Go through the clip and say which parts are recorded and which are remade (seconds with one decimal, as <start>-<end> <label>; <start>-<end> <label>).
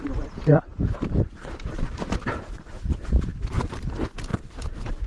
0.0-0.7 recorded; 0.7-3.8 remade; 3.8-4.3 recorded; 4.3-5.1 remade